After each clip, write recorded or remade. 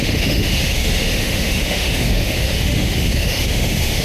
remade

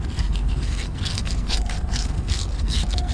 remade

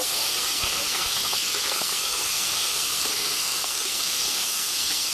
remade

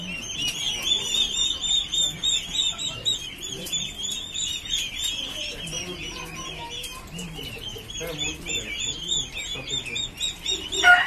recorded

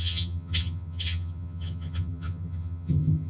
remade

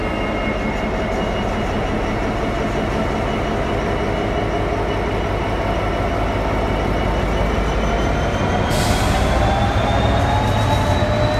recorded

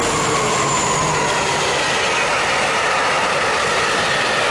recorded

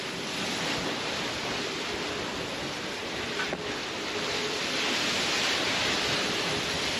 recorded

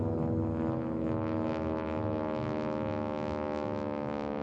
recorded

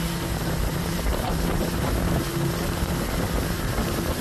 recorded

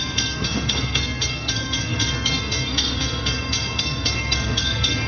remade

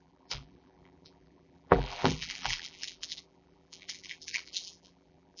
remade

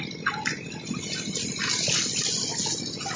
recorded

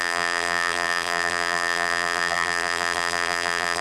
remade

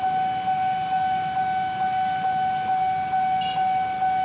recorded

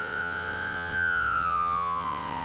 remade